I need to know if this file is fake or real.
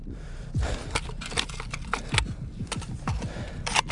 real